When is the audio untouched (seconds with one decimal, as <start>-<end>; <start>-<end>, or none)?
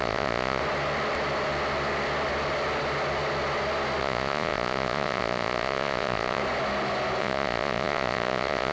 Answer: 0.6-4.0; 6.4-7.2